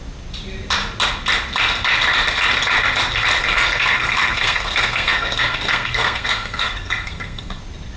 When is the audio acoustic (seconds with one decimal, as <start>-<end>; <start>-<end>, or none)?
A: 0.0-3.4; 7.6-8.0